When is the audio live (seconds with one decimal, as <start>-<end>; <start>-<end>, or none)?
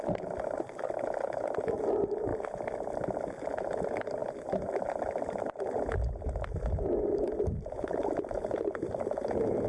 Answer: 0.0-4.2; 7.8-9.7